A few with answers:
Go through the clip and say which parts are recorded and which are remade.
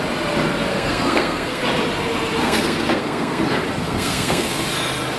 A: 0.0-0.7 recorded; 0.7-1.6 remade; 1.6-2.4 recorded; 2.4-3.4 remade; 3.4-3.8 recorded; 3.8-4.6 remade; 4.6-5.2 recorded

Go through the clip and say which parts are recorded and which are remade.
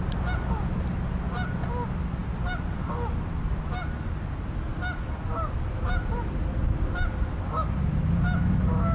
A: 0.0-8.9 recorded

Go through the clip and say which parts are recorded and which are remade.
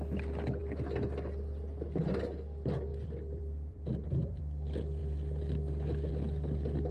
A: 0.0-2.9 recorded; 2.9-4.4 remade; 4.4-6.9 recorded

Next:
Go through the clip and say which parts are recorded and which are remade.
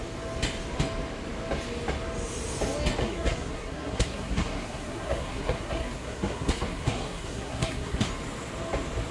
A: 0.0-3.0 recorded; 3.0-8.1 remade; 8.1-9.1 recorded